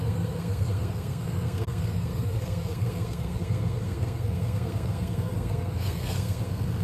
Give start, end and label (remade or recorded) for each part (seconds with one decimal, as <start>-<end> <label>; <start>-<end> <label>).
0.0-6.8 remade